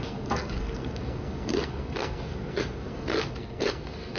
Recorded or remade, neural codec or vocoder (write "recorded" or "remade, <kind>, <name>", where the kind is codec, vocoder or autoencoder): remade, codec, SNAC